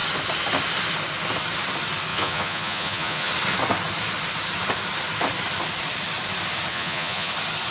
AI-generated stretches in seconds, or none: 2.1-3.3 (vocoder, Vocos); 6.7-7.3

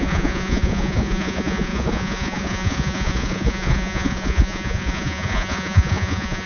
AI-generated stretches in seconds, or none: 0.0-6.5 (vocoder, Vocos)

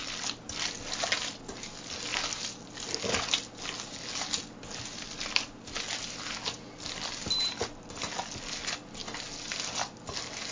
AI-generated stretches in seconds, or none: none

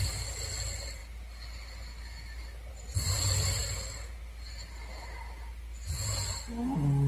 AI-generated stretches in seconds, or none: none

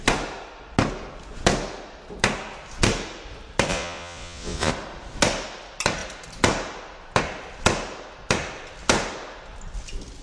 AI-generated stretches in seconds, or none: 3.7-4.7 (vocoder, Vocos)

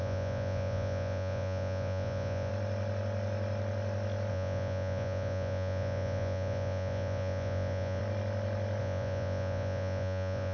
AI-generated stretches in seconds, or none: 0.0-2.5 (vocoder, Vocos); 4.3-8.0; 8.8-10.5

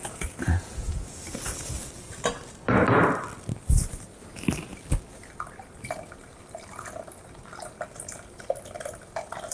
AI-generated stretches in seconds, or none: 0.0-1.7 (vocoder, Vocos)

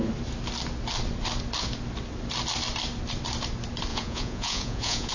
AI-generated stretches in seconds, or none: 3.9-5.1 (vocoder, Vocos)